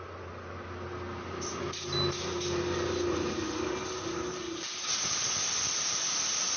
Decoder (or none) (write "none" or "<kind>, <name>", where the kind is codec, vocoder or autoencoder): none